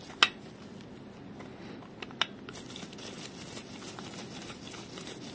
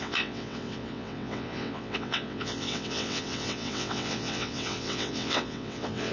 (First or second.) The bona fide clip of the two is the first